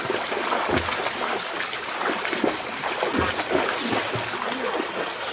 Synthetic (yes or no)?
no